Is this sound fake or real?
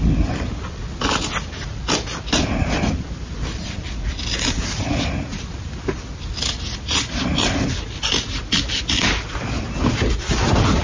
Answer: real